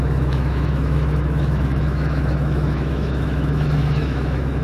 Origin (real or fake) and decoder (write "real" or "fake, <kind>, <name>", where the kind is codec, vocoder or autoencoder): fake, autoencoder, DAC-VAE